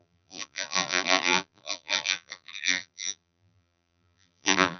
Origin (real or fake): fake